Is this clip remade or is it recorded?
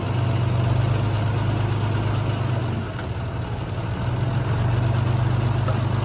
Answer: recorded